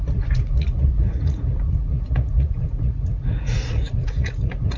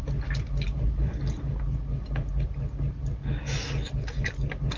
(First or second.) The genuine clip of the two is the second